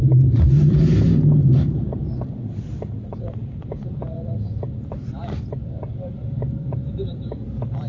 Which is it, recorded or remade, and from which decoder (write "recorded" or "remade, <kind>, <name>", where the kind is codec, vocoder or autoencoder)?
remade, vocoder, BigVGAN v2